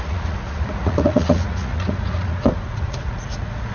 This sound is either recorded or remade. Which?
remade